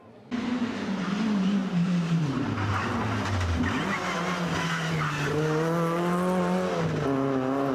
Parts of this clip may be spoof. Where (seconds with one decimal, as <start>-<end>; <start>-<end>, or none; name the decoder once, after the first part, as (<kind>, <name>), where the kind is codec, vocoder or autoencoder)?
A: 1.6-2.2 (vocoder, BigVGAN v2)